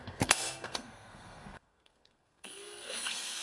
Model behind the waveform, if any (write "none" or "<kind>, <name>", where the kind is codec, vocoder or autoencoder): codec, SNAC